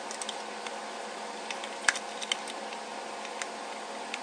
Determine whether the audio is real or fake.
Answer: real